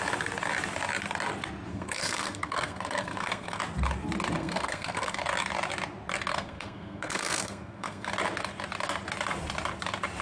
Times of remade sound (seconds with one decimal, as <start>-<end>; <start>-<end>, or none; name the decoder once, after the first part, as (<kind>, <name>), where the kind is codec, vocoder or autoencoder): 1.7-3.6 (codec, SNAC); 4.4-5.2; 6.3-8.1